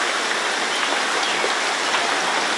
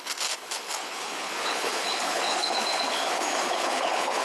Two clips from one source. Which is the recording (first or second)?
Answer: first